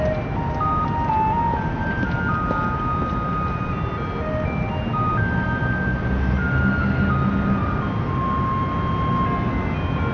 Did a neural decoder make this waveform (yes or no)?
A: no